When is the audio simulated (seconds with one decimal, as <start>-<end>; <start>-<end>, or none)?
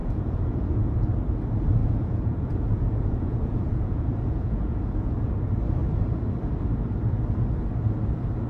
0.0-1.1; 1.8-5.3